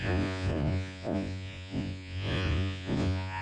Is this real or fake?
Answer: fake